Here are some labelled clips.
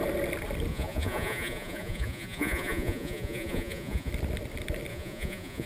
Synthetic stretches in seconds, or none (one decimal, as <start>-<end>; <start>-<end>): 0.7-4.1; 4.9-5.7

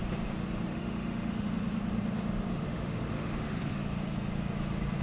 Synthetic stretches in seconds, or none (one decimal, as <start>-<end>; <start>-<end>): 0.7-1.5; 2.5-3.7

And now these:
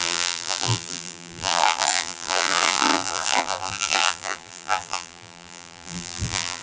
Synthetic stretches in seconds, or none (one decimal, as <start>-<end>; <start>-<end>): 0.0-6.6

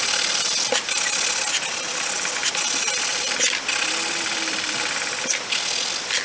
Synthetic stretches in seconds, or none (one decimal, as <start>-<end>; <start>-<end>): none

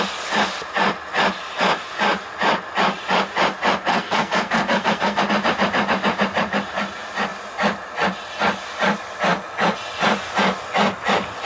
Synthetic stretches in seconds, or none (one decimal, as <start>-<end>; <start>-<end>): 3.9-5.2

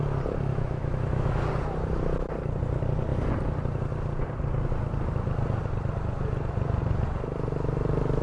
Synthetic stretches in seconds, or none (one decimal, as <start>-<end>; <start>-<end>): 0.5-1.4

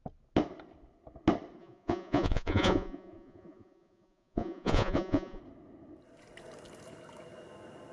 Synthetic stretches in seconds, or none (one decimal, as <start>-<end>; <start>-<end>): 1.6-5.4

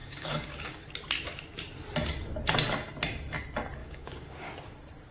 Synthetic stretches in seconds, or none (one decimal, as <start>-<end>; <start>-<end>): 0.0-0.8; 3.8-4.5